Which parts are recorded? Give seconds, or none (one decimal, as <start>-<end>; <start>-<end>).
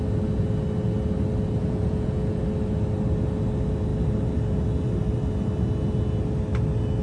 0.0-1.6; 2.4-7.0